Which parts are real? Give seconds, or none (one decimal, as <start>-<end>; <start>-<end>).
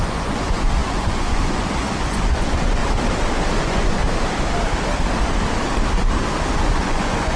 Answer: 2.8-3.6; 4.0-6.6